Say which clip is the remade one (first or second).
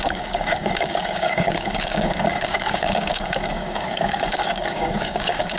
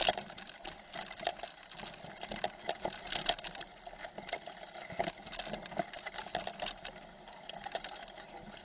first